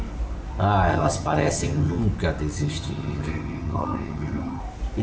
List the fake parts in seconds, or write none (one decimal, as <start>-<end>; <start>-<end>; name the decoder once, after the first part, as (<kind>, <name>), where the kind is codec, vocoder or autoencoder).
0.9-2.0 (vocoder, HiFi-GAN); 2.6-4.6